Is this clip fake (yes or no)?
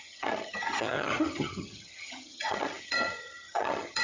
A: yes